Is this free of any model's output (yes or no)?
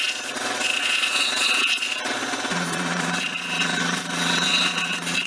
no